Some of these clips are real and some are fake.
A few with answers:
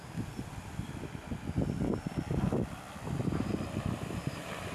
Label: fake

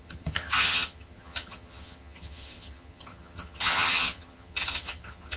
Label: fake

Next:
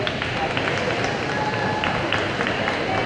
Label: real